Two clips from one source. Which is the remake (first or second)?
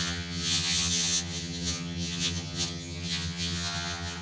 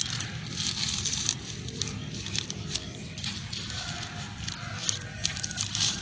first